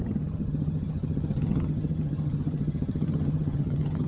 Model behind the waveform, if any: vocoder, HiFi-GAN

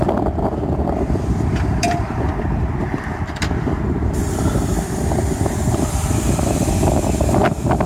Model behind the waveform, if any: vocoder, BigVGAN v2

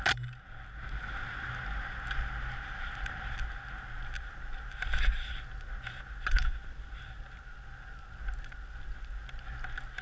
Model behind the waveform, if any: none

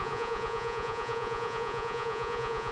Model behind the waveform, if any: vocoder, Vocos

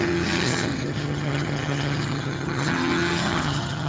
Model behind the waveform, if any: vocoder, HiFi-GAN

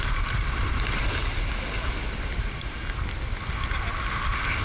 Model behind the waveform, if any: none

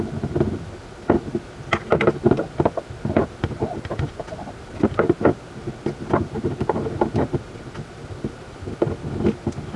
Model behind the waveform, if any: none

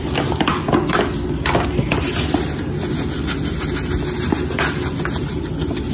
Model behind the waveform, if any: none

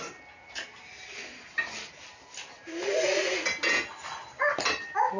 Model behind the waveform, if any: none